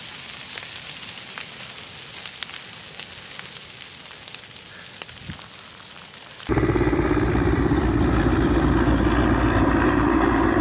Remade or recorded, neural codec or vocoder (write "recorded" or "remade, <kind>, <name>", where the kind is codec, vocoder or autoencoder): recorded